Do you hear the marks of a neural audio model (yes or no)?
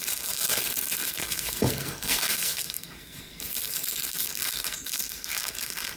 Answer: yes